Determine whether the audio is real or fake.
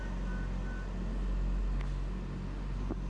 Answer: real